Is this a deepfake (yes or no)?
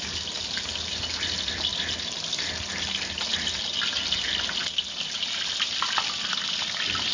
no